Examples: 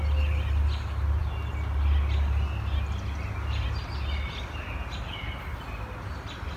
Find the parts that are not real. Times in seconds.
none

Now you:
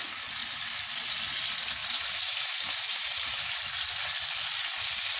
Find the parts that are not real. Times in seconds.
1.8-3.4

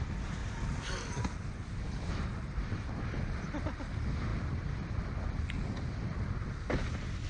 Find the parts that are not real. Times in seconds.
none

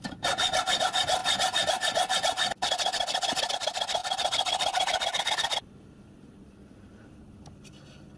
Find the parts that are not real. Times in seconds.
4.0-7.2

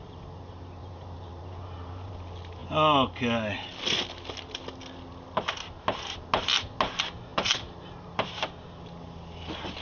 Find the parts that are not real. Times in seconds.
0.8-2.1; 7.3-8.3

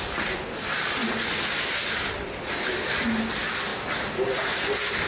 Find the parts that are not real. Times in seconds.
0.0-1.0; 1.7-3.7

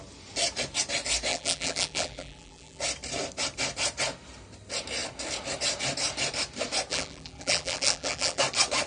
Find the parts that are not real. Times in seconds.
1.3-2.8; 6.9-8.4

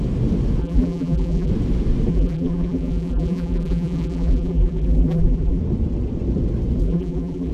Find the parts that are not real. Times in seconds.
0.6-1.5; 2.1-5.6; 6.8-7.5